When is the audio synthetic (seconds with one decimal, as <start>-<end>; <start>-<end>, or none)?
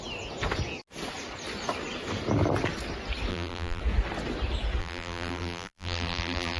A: 3.3-3.8; 4.8-6.6